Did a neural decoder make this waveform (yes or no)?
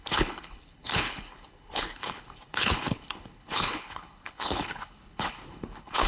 yes